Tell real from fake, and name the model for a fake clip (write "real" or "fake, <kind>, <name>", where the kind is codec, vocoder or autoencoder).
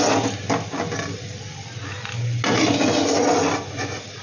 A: real